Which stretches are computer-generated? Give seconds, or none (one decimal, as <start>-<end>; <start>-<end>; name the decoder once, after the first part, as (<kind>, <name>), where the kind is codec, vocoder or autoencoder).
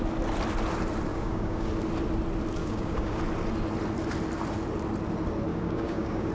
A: 1.1-1.7 (codec, DAC); 2.6-3.2; 5.5-6.3